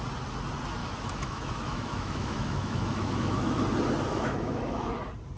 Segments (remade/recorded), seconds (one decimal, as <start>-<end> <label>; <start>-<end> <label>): 0.0-0.8 recorded; 0.8-3.6 remade; 3.6-4.1 recorded; 4.1-4.9 remade; 4.9-5.4 recorded